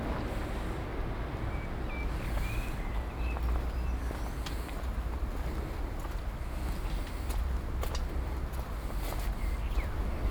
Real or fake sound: real